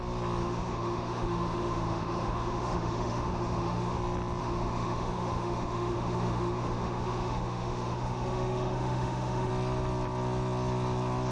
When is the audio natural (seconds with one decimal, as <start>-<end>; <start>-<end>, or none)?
0.0-0.4; 4.0-4.4; 9.5-11.3